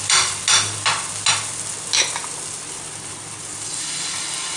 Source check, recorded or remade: recorded